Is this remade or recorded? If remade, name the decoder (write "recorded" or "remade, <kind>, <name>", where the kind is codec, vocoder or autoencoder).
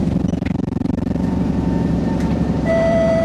remade, vocoder, BigVGAN v2